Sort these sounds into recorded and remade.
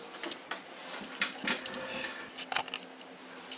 recorded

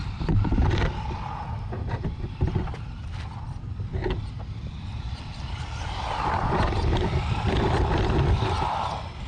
recorded